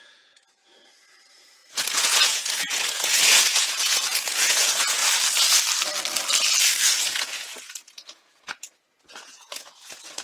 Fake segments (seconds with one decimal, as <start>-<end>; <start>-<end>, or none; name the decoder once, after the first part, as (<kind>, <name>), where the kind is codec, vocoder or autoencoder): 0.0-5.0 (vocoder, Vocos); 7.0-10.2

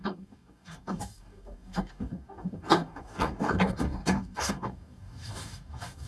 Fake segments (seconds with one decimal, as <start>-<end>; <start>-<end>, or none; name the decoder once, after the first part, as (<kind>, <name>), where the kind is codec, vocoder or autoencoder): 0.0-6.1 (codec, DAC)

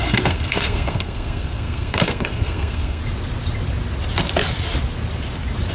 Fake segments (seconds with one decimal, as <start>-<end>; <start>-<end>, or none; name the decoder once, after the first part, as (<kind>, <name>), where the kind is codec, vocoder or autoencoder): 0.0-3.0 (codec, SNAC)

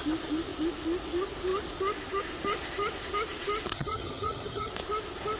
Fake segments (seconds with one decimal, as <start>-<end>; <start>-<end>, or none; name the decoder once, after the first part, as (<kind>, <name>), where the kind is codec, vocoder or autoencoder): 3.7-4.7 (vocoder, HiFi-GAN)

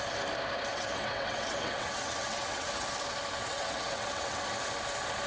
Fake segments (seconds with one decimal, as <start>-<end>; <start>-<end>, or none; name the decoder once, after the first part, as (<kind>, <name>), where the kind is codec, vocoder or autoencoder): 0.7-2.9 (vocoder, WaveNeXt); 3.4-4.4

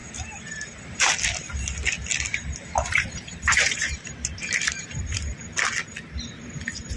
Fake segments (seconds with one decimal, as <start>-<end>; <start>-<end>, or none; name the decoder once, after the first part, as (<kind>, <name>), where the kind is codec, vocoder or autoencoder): 0.0-1.1 (vocoder, BigVGAN v2); 2.3-5.4

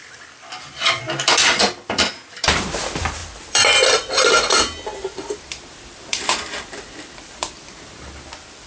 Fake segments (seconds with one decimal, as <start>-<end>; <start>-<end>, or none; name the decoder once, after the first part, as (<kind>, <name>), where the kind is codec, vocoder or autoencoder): 0.0-8.7 (vocoder, BigVGAN v2)